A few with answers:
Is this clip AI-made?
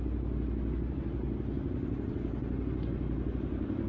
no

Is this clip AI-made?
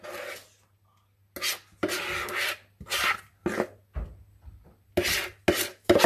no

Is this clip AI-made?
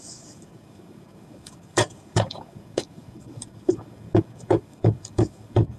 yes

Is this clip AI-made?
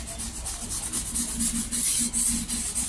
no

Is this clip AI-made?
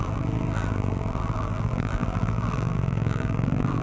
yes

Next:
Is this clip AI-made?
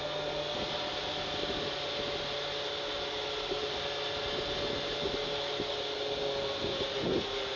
no